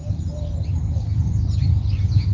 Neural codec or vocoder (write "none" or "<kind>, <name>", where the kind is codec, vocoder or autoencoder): none